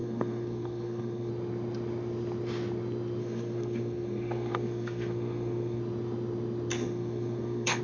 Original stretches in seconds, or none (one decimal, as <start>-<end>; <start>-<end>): 1.3-3.2; 5.8-6.7